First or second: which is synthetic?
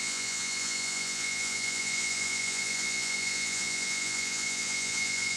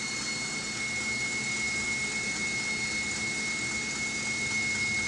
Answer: first